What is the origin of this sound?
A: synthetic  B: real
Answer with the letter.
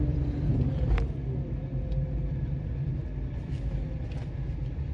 B